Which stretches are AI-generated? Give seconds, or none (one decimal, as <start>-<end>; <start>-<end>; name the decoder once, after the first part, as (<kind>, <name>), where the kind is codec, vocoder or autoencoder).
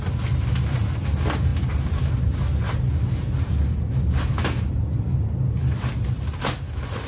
none